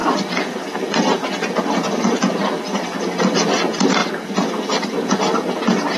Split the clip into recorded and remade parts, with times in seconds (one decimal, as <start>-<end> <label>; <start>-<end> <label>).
0.0-6.0 recorded